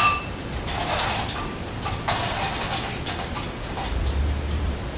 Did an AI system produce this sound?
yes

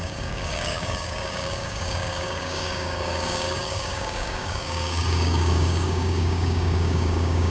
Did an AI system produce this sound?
yes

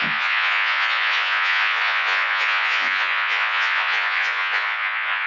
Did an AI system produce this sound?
yes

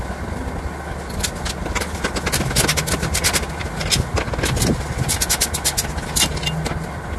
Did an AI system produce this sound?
no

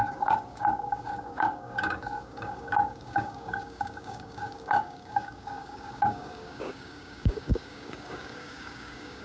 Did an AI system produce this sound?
yes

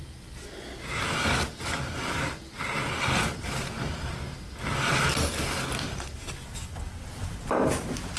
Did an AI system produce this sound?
no